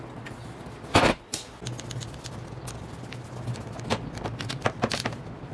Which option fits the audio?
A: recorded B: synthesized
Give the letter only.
A